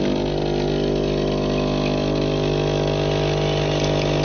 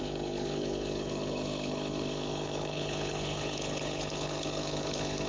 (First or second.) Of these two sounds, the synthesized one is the second